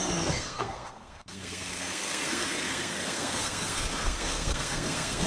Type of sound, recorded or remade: remade